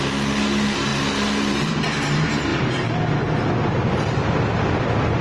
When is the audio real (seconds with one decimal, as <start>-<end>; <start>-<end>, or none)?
0.0-5.2

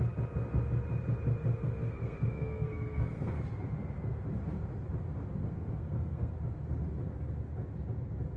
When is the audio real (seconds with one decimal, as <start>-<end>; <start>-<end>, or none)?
0.0-1.9; 3.3-5.4; 6.3-8.4